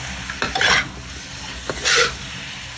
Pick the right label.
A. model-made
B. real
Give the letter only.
B